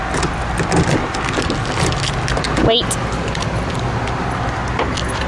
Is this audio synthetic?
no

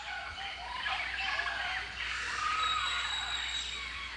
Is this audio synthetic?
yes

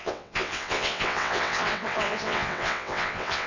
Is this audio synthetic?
yes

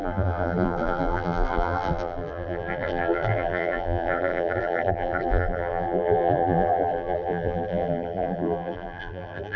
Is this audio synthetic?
yes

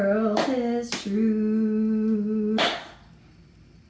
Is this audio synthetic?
no